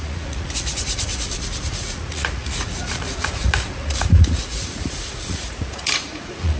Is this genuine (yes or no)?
no